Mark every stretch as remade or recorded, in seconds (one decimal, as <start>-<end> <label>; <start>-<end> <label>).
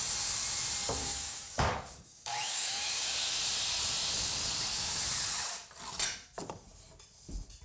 0.0-1.0 recorded; 1.0-3.4 remade; 3.4-7.6 recorded